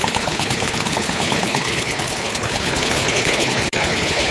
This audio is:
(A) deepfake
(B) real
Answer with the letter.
A